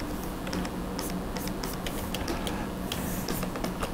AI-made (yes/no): no